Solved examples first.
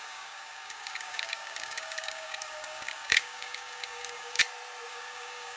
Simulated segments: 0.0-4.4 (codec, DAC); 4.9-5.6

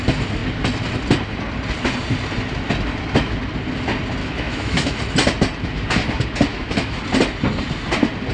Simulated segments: 4.2-5.0 (autoencoder, DAC-VAE); 6.5-7.0

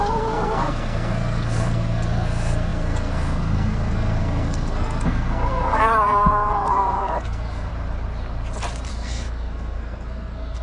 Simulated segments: 0.0-7.7 (codec, SNAC); 8.9-10.6

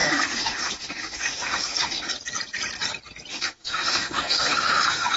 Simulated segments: 0.0-2.1 (autoencoder, DAC-VAE); 3.3-5.2

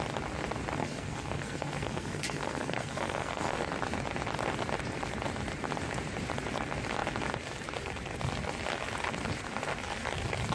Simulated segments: 0.8-3.7 (codec, SNAC)

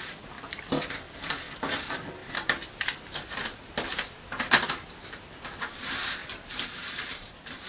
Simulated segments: 0.0-7.7 (vocoder, BigVGAN v2)

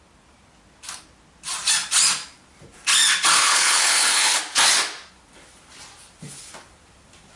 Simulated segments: 3.4-4.4 (codec, HILCodec)